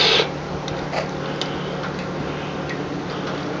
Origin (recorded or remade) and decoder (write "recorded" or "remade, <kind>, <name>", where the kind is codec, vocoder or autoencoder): recorded